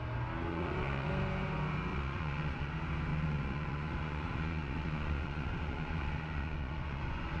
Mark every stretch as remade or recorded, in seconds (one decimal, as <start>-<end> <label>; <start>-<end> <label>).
0.0-0.5 recorded; 0.5-1.1 remade; 1.1-1.9 recorded; 1.9-2.7 remade; 2.7-3.1 recorded; 3.1-7.4 remade